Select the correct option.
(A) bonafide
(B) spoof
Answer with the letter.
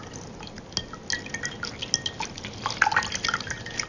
A